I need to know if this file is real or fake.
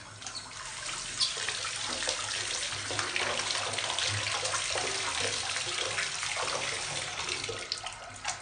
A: real